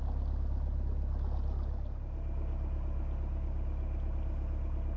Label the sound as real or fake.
real